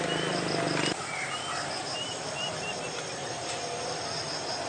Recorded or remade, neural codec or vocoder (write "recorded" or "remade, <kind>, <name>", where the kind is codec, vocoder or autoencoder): recorded